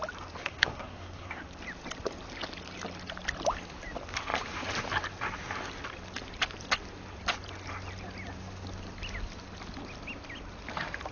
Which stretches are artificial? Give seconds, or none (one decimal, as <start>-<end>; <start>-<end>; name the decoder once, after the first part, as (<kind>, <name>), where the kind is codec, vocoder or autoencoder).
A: 0.4-1.4 (codec, SNAC)